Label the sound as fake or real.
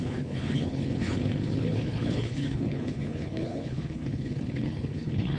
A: fake